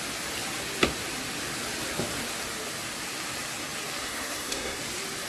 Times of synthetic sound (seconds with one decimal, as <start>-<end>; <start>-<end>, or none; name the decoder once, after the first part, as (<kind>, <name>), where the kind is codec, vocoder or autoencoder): 4.0-4.8 (codec, SNAC)